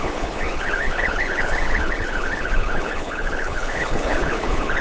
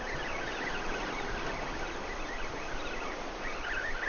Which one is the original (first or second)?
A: second